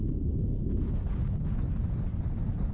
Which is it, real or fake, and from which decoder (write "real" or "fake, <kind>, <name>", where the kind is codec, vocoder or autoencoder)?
real